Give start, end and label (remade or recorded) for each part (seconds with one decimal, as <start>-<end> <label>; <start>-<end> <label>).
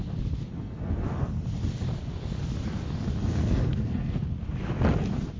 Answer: 0.0-0.5 recorded; 0.5-1.4 remade; 1.4-3.2 recorded; 3.2-4.3 remade; 4.3-5.4 recorded